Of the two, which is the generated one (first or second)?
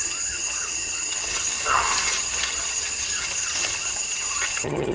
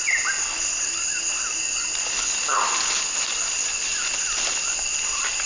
first